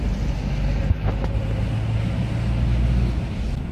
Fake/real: real